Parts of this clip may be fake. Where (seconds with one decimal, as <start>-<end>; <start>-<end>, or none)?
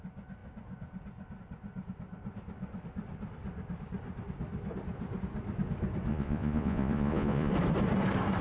6.1-7.5